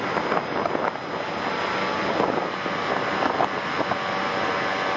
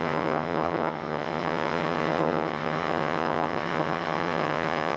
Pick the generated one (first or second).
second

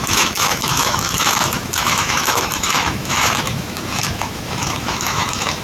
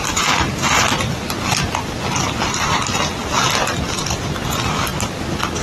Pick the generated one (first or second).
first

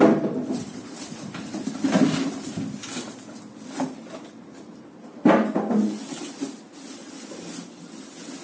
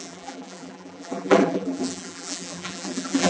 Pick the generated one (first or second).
second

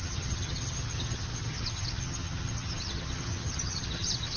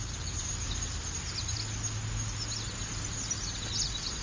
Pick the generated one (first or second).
first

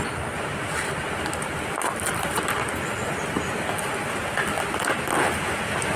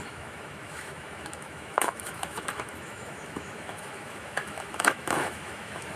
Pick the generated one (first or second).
second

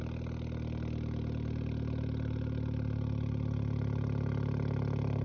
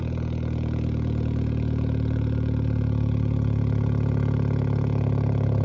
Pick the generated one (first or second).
second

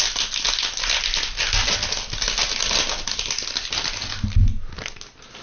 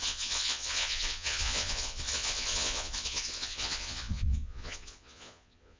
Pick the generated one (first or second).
second